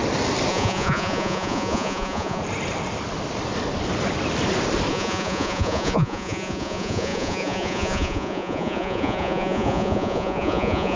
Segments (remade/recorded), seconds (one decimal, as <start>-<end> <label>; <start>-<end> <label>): 0.0-0.5 recorded; 0.5-2.4 remade; 2.4-4.9 recorded; 4.9-11.0 remade